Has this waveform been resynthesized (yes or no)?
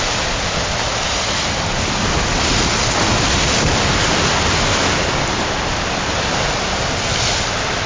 no